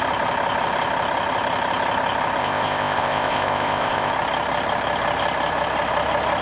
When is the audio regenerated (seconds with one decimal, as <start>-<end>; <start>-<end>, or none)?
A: 2.4-4.1